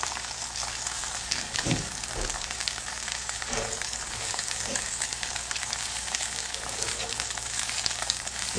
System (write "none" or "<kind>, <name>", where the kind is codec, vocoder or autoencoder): codec, DAC